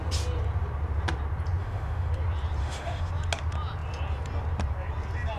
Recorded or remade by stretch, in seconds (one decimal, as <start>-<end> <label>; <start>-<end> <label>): 0.0-1.6 recorded; 1.6-2.1 remade; 2.1-2.6 recorded; 2.6-3.1 remade; 3.1-5.4 recorded